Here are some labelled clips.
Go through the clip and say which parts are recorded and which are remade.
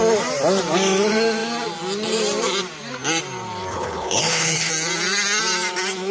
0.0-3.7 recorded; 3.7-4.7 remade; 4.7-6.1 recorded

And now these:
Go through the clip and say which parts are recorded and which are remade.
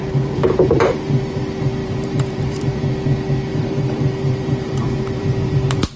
0.0-1.4 remade; 1.4-1.8 recorded; 1.8-2.8 remade; 2.8-3.5 recorded; 3.5-6.0 remade